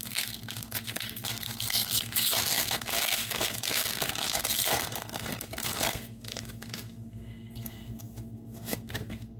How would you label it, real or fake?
fake